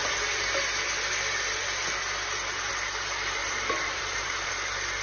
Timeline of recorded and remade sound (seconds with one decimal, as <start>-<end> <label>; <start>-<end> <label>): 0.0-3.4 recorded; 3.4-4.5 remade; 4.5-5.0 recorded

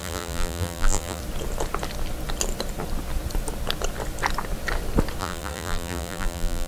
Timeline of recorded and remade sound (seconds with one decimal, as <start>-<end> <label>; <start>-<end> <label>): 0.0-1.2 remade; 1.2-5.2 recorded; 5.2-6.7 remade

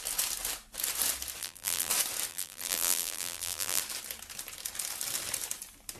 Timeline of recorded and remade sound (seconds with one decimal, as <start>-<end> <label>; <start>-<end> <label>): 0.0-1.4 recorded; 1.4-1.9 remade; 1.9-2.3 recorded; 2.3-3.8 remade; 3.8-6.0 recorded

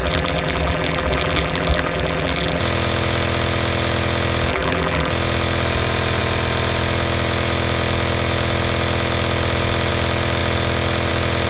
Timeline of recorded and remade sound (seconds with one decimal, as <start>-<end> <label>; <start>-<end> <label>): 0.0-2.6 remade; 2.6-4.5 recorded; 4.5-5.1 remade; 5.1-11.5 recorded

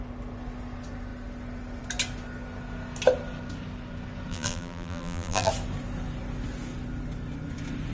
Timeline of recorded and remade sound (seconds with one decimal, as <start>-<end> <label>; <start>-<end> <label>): 0.0-4.3 recorded; 4.3-5.5 remade; 5.5-7.9 recorded